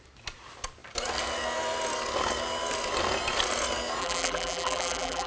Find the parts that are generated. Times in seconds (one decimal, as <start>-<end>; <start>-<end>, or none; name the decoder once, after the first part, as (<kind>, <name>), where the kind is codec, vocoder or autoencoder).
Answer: 4.0-5.3 (vocoder, BigVGAN v2)